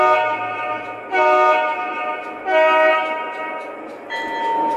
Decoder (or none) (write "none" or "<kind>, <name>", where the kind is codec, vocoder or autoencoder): none